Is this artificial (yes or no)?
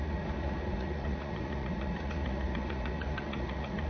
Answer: yes